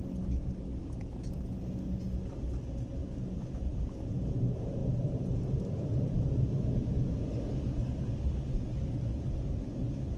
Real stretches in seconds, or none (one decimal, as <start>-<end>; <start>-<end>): 0.0-3.0; 3.8-4.8; 7.8-10.2